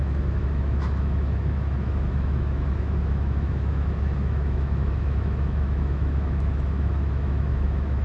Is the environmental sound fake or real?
fake